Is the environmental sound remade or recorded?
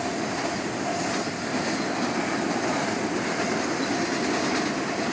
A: recorded